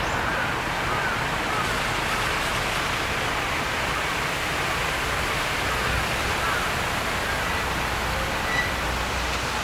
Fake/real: real